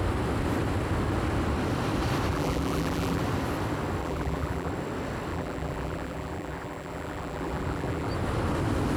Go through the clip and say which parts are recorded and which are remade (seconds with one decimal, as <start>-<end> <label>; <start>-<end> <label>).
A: 0.0-2.3 recorded; 2.3-3.2 remade; 3.2-4.0 recorded; 4.0-4.7 remade; 4.7-5.3 recorded; 5.3-8.1 remade; 8.1-9.0 recorded